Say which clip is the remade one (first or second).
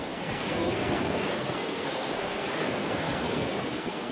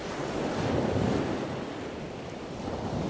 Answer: first